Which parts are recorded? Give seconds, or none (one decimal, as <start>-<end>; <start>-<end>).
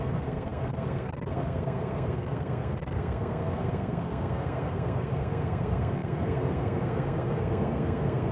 none